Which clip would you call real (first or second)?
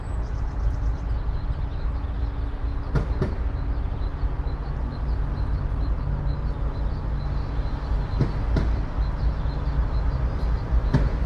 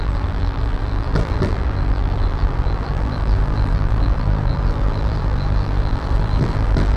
first